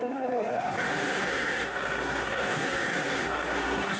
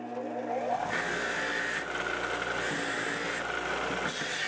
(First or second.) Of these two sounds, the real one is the second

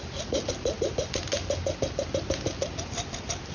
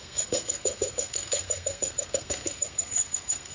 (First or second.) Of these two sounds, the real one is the first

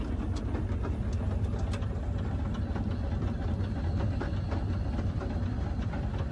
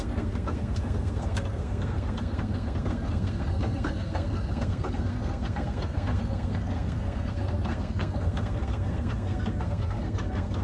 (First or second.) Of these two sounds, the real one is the first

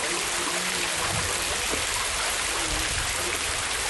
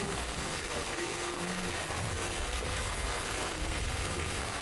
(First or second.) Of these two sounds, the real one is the first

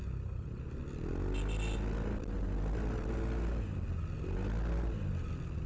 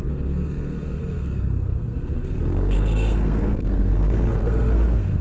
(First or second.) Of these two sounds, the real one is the first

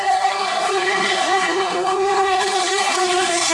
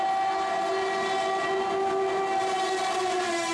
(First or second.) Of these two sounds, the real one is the second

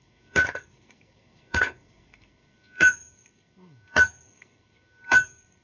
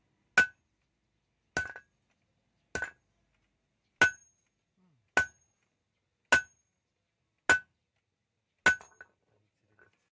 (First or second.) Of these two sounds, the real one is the second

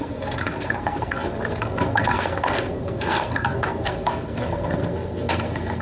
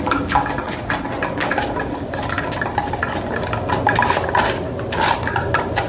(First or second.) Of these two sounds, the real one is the second